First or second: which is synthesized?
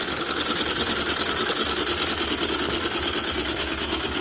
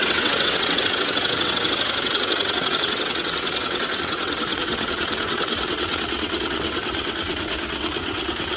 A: second